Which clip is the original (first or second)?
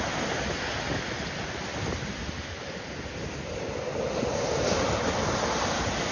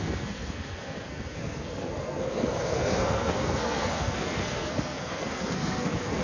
first